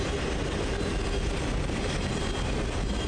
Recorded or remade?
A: recorded